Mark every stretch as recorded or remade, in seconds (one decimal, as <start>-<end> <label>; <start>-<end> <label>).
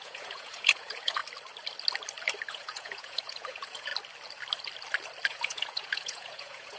0.0-1.2 remade; 1.2-2.5 recorded; 2.5-3.9 remade; 3.9-5.3 recorded; 5.3-6.8 remade